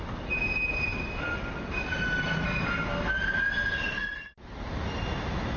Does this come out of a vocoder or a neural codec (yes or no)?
no